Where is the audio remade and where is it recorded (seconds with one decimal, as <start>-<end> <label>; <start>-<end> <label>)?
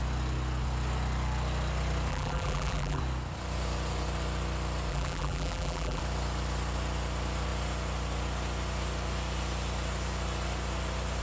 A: 0.0-2.1 recorded; 2.1-3.0 remade; 3.0-4.9 recorded; 4.9-6.0 remade; 6.0-11.2 recorded